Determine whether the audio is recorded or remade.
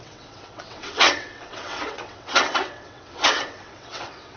remade